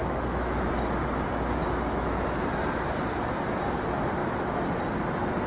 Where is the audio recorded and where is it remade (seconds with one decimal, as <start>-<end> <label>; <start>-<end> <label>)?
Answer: 0.0-0.7 remade; 0.7-1.6 recorded; 1.6-2.4 remade; 2.4-4.2 recorded; 4.2-4.8 remade; 4.8-5.5 recorded